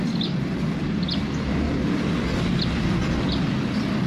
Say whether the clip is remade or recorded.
recorded